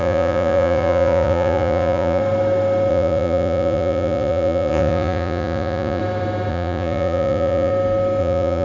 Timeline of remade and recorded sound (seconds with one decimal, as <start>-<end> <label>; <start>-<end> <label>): 0.0-2.2 remade; 2.2-2.9 recorded; 2.9-6.0 remade; 6.0-6.5 recorded; 6.5-7.7 remade; 7.7-8.2 recorded; 8.2-8.6 remade